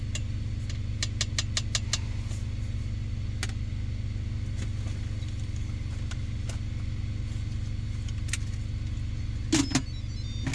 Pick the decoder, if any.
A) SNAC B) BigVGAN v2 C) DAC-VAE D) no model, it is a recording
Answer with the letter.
D